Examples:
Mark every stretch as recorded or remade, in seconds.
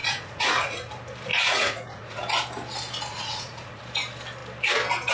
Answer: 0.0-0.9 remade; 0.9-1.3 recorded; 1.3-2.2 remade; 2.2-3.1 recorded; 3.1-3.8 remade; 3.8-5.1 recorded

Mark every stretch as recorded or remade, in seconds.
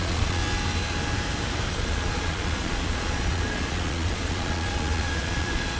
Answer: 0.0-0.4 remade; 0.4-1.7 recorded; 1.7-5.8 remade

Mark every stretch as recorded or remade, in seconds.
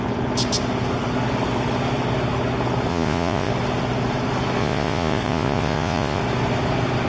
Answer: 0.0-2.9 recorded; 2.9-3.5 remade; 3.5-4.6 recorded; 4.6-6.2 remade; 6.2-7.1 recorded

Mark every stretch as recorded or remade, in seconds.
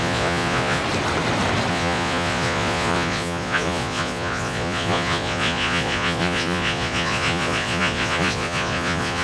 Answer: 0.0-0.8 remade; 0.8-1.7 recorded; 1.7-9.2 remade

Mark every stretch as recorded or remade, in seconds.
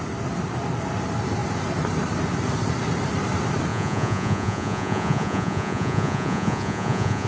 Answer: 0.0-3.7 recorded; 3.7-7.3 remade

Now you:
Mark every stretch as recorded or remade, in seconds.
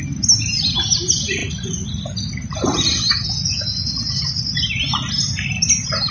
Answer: 0.0-6.1 recorded